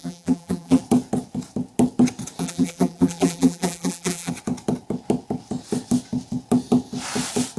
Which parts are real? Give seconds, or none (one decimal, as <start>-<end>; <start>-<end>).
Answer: 0.8-2.4; 4.3-7.6